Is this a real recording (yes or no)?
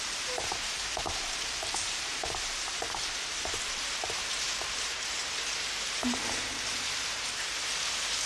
no